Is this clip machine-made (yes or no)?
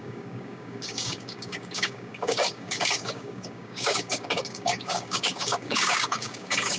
yes